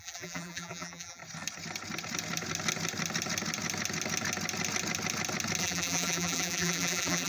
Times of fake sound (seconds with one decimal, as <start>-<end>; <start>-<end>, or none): 0.0-1.2; 5.6-7.3